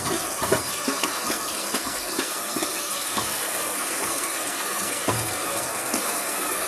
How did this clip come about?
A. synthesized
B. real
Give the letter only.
A